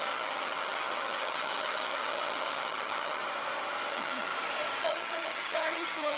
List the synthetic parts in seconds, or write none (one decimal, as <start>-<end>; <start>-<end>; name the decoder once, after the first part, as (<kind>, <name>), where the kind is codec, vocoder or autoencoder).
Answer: 0.0-3.2 (vocoder, HiFi-GAN); 3.9-4.3; 4.8-6.2